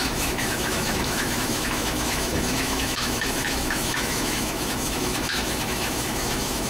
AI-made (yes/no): yes